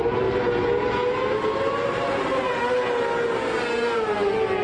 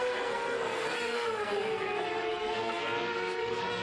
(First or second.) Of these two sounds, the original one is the first